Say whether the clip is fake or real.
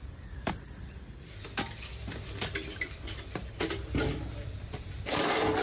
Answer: fake